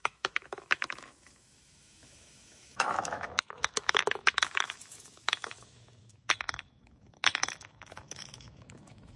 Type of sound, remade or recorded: remade